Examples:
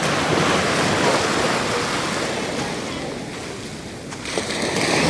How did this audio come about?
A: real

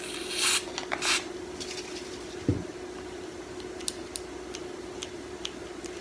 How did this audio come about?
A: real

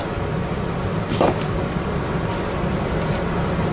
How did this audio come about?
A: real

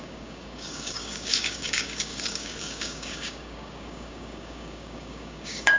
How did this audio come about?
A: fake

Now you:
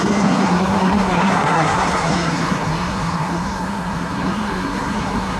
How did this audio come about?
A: fake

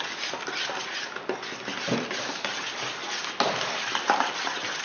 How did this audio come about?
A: real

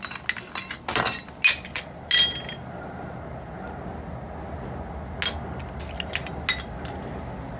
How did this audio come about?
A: real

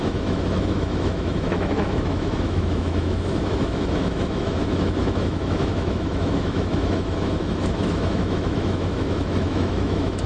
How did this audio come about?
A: fake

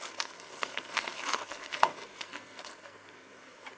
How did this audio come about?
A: fake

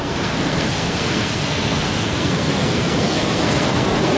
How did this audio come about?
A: fake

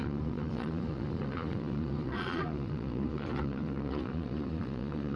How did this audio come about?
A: fake